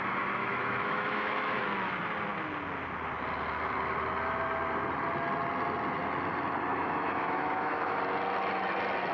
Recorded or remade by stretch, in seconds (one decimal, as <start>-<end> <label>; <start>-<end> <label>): 0.0-0.4 recorded; 0.4-1.6 remade; 1.6-6.7 recorded; 6.7-8.0 remade; 8.0-9.1 recorded